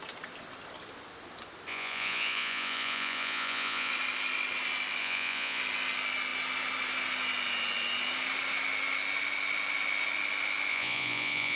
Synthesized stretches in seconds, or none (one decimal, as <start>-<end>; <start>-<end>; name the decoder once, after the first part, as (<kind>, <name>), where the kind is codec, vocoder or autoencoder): 1.7-3.9 (vocoder, Vocos); 5.0-5.6; 10.7-11.6